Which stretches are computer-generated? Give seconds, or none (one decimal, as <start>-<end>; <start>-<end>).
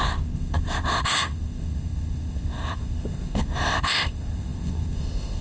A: 0.0-5.4